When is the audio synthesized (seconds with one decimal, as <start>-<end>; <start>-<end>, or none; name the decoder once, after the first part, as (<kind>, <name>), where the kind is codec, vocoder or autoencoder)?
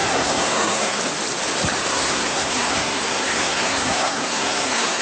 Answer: 0.0-1.0 (codec, SNAC); 1.9-5.0